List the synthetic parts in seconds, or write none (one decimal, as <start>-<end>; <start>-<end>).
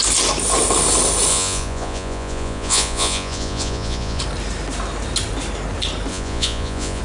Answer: 1.3-4.2; 6.1-7.0